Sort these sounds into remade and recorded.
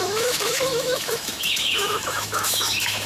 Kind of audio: remade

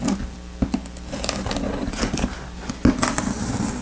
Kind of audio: recorded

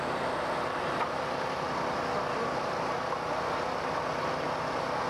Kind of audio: recorded